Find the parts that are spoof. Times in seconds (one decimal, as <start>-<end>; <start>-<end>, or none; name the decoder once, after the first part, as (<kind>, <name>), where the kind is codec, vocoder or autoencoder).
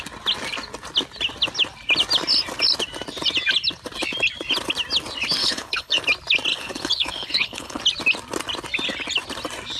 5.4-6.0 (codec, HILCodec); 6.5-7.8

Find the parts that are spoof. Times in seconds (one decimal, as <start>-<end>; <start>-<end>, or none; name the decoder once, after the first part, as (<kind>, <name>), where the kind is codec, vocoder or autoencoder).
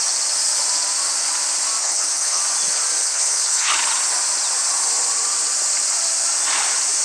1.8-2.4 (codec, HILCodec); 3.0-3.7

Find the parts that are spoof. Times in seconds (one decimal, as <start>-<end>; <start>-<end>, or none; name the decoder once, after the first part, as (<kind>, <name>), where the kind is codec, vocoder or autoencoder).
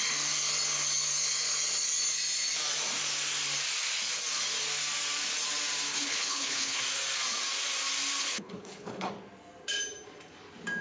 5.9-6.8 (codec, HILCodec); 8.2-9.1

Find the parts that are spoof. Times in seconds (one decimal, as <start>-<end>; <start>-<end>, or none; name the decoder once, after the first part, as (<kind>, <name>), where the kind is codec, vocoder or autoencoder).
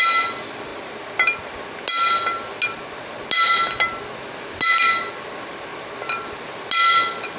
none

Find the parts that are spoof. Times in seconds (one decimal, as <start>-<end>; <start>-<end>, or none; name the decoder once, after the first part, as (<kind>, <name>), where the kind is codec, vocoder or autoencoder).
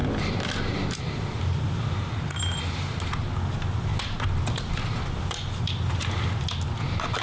none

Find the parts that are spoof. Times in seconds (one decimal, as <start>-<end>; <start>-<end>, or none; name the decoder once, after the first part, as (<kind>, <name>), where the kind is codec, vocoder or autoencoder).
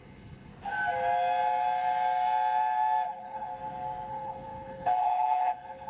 0.0-0.5 (codec, HILCodec); 3.1-3.5; 4.1-5.9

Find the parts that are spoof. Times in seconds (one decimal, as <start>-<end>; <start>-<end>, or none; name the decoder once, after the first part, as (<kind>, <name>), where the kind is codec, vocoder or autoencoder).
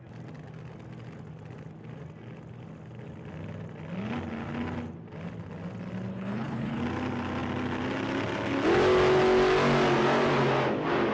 6.1-6.8 (codec, HILCodec)